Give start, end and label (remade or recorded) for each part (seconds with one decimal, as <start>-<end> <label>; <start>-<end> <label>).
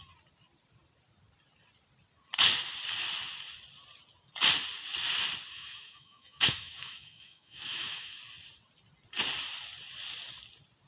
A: 0.0-5.5 recorded; 5.5-8.2 remade; 8.2-10.9 recorded